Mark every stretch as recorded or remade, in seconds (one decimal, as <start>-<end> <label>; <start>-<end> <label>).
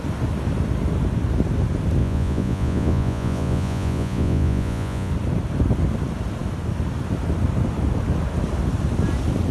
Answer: 0.0-2.0 recorded; 2.0-5.1 remade; 5.1-9.5 recorded